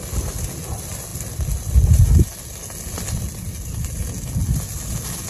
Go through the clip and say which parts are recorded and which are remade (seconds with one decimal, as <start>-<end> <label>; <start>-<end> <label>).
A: 0.0-5.3 recorded